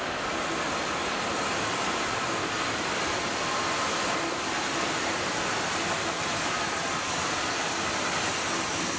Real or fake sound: real